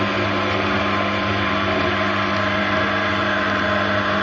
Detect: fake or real real